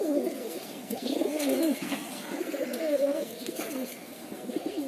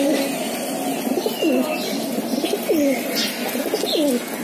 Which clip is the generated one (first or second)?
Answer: first